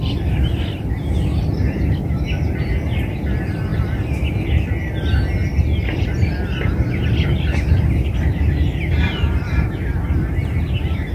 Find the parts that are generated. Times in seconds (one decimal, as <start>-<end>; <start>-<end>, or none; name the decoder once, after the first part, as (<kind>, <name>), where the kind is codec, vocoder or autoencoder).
none